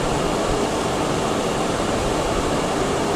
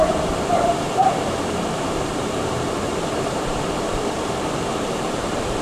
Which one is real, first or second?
first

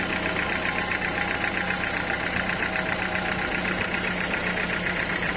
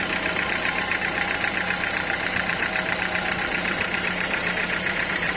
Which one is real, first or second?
first